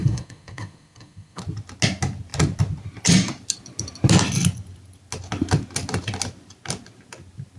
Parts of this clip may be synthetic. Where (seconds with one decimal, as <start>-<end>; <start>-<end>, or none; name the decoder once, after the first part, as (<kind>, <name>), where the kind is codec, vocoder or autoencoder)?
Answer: 0.0-1.4 (codec, SNAC)